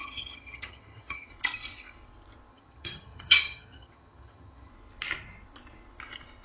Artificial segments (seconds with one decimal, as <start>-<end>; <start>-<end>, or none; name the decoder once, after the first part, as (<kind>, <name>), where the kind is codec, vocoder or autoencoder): 0.0-1.3 (vocoder, HiFi-GAN); 2.5-4.7